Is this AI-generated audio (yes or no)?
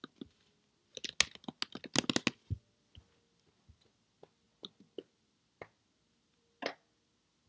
no